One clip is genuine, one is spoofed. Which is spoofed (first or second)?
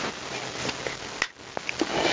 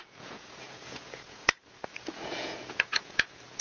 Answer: second